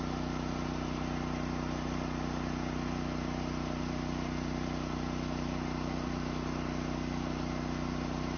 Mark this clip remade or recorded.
recorded